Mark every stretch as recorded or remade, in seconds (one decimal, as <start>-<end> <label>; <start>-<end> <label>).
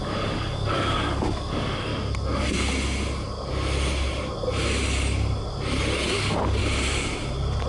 0.0-1.9 remade; 1.9-6.1 recorded; 6.1-6.6 remade; 6.6-7.7 recorded